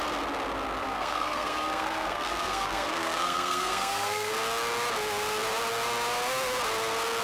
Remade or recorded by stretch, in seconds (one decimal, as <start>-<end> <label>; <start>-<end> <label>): 0.0-0.8 recorded; 0.8-4.3 remade; 4.3-7.2 recorded